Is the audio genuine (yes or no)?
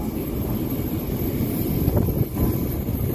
yes